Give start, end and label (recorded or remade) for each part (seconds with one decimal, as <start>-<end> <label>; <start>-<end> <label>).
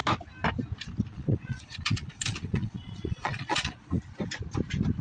0.0-1.1 recorded; 1.1-4.0 remade; 4.0-5.0 recorded